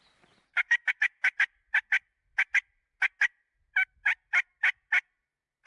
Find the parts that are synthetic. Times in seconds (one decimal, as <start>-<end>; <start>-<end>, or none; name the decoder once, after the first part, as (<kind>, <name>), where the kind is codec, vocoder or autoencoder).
none